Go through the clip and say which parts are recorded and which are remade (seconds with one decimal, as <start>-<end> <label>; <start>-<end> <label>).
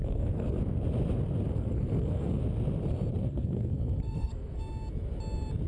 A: 0.0-0.6 remade; 0.6-1.5 recorded; 1.5-2.4 remade; 2.4-3.2 recorded; 3.2-4.6 remade; 4.6-5.7 recorded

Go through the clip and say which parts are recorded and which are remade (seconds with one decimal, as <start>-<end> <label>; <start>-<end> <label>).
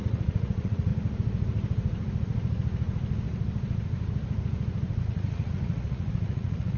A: 0.0-0.9 remade; 0.9-5.0 recorded; 5.0-6.8 remade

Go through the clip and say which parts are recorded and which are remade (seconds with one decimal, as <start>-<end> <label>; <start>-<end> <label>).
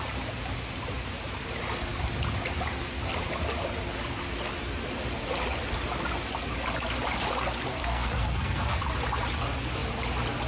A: 0.0-7.7 recorded; 7.7-8.8 remade; 8.8-10.5 recorded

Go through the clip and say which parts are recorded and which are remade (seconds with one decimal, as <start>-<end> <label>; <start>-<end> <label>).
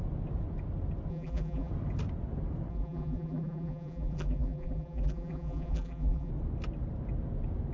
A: 0.0-1.1 recorded; 1.1-1.7 remade; 1.7-2.7 recorded; 2.7-6.3 remade; 6.3-7.7 recorded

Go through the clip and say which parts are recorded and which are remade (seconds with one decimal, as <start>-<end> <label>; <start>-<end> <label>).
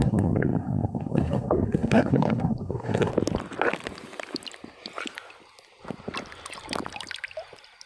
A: 0.0-3.1 remade; 3.1-7.9 recorded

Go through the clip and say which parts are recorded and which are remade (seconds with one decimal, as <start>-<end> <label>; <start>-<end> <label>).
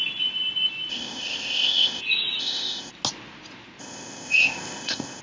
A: 0.0-0.9 recorded; 0.9-2.0 remade; 2.0-2.4 recorded; 2.4-2.9 remade; 2.9-3.8 recorded; 3.8-5.2 remade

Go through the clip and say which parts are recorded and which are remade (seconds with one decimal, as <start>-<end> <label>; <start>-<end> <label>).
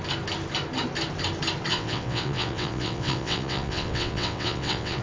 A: 0.0-1.7 recorded; 1.7-5.0 remade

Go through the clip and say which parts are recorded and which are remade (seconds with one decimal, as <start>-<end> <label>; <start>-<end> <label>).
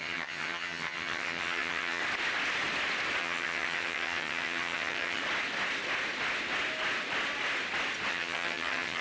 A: 0.0-2.0 remade; 2.0-3.2 recorded; 3.2-5.2 remade; 5.2-8.1 recorded; 8.1-9.0 remade